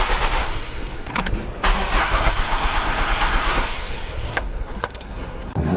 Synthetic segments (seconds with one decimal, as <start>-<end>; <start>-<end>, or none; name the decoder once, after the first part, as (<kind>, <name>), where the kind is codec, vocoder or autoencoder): 0.4-1.3 (codec, SNAC); 2.0-5.8